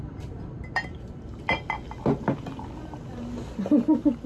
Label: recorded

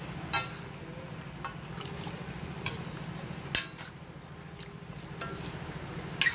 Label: recorded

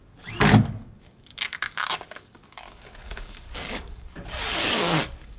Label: remade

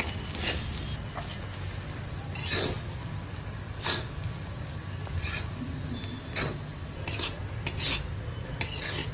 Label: recorded